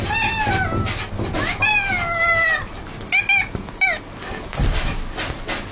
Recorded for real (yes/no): yes